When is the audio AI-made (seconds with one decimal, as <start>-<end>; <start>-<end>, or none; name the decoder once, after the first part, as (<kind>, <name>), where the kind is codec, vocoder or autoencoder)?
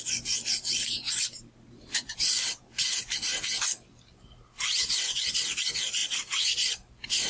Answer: none